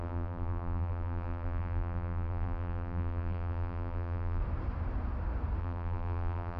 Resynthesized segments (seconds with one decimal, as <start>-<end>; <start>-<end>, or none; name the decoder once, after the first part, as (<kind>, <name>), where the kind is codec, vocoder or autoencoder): 0.0-4.4 (vocoder, BigVGAN v2); 5.6-6.6